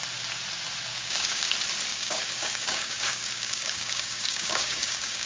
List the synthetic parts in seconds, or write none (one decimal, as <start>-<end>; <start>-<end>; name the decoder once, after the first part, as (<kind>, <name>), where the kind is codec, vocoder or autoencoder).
0.9-1.5 (codec, DAC); 1.9-5.3